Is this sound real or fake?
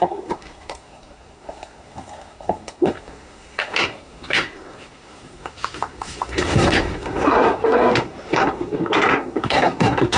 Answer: fake